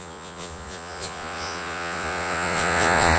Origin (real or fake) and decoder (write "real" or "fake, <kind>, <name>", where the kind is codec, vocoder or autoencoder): fake, vocoder, Vocos